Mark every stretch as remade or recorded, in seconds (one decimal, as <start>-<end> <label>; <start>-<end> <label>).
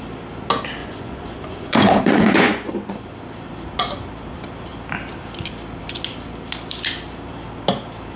0.0-0.8 recorded; 0.8-2.7 remade; 2.7-8.2 recorded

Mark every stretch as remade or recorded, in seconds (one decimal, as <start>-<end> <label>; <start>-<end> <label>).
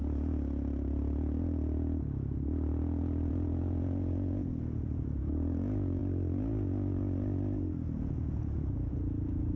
0.0-3.3 recorded; 3.3-6.0 remade; 6.0-8.1 recorded; 8.1-9.6 remade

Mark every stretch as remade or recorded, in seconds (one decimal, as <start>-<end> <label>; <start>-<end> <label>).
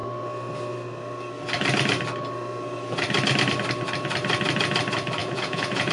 0.0-5.2 recorded; 5.2-5.9 remade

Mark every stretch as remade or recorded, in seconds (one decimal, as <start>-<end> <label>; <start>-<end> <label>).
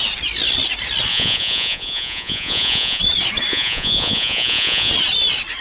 0.0-1.1 recorded; 1.1-3.0 remade; 3.0-3.5 recorded; 3.5-4.9 remade; 4.9-5.6 recorded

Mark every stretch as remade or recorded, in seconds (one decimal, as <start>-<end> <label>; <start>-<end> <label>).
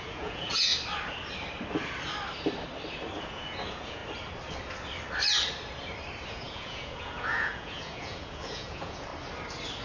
0.0-0.7 remade; 0.7-3.2 recorded; 3.2-4.0 remade; 4.0-6.3 recorded; 6.3-9.1 remade; 9.1-9.8 recorded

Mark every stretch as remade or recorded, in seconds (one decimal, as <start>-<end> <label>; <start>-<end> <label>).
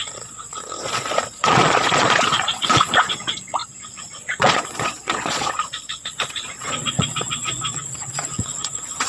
0.0-9.1 remade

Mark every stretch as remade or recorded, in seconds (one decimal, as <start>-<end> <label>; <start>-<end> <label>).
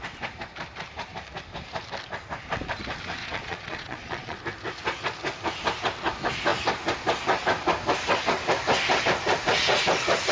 0.0-3.2 recorded; 3.2-4.4 remade; 4.4-10.3 recorded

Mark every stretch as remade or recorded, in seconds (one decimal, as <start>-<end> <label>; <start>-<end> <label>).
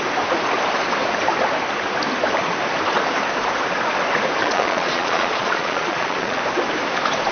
0.0-4.4 recorded; 4.4-6.4 remade; 6.4-7.3 recorded